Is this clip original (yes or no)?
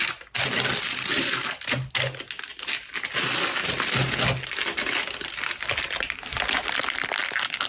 yes